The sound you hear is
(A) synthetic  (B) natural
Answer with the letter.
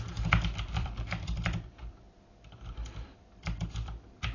A